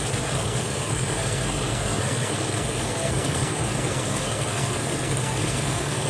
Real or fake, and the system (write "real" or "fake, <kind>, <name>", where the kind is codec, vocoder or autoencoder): fake, codec, SNAC